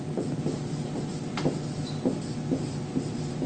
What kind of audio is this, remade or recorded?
recorded